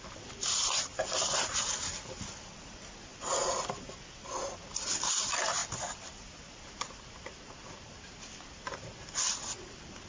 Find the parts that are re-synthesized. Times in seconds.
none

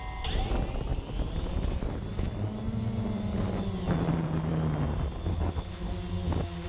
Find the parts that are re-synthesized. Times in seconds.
5.3-5.9 (codec, HILCodec)

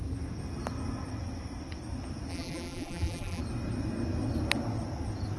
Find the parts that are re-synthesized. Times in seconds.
2.3-3.4 (vocoder, BigVGAN v2)

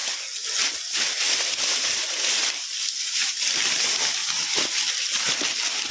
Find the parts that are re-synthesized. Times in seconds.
none

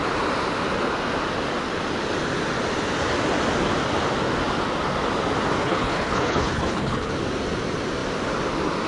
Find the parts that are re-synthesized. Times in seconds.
5.6-7.1 (codec, HILCodec)

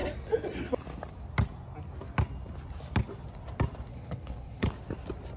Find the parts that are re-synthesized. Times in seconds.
3.9-4.7 (codec, HILCodec)